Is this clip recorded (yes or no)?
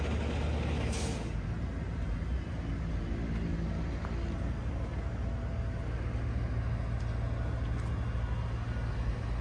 yes